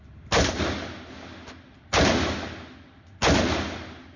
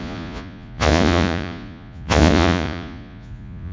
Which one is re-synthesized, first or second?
second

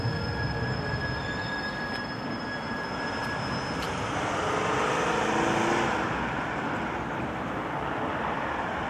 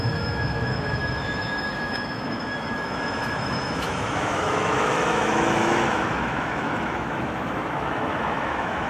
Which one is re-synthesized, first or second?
second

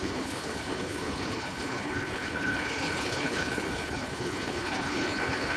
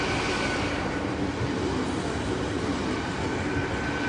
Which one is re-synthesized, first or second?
first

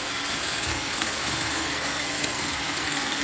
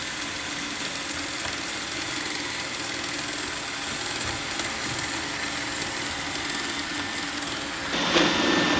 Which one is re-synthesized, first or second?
first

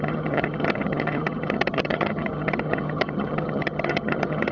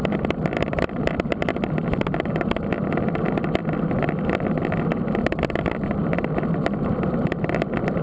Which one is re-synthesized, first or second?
first